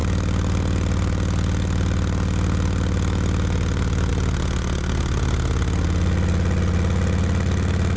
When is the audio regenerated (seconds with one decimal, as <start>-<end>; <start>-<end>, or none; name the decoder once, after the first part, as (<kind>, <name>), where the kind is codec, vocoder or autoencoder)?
none